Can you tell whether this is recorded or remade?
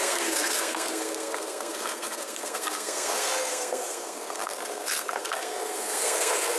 remade